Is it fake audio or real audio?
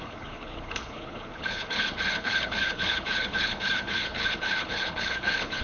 fake